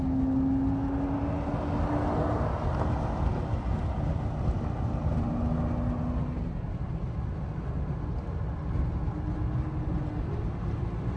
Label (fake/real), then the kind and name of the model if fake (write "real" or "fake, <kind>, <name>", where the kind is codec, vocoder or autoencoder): real